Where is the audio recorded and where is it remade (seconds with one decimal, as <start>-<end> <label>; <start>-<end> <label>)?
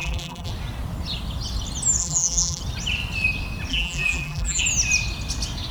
0.0-0.5 remade; 0.5-2.0 recorded; 2.0-2.6 remade; 2.6-3.7 recorded; 3.7-4.6 remade; 4.6-5.7 recorded